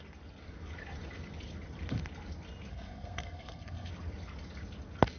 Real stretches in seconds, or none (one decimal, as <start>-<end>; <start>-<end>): 0.0-2.7; 3.9-5.2